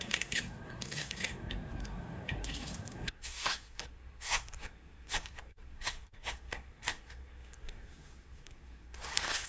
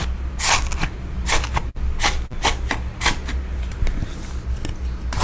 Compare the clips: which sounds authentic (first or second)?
second